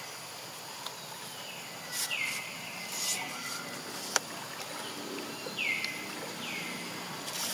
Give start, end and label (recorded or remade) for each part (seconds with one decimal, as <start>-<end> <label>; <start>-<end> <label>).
0.0-7.5 recorded